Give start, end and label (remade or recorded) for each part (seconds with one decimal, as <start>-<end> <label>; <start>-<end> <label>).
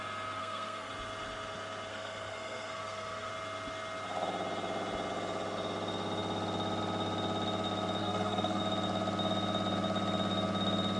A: 0.0-0.4 recorded; 0.4-0.9 remade; 0.9-1.9 recorded; 1.9-3.3 remade; 3.3-8.0 recorded; 8.0-8.6 remade; 8.6-11.0 recorded